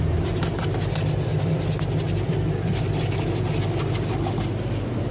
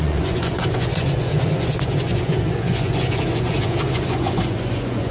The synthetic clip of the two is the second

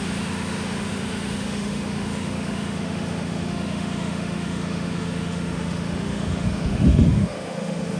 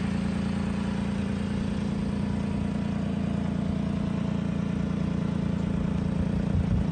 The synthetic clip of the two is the first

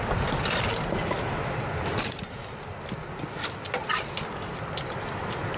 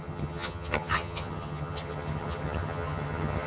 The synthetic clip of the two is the second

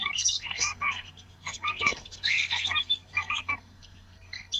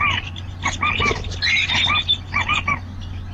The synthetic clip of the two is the first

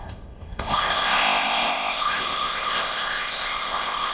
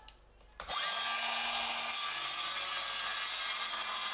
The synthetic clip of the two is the first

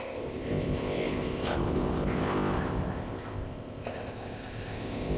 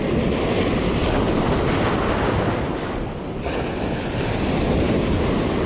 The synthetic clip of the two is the first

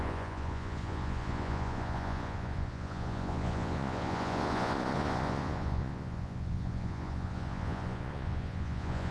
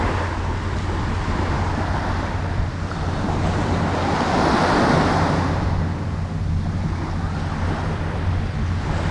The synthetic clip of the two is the first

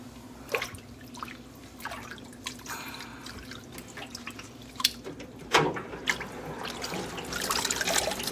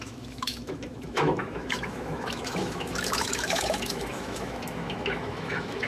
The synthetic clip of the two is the second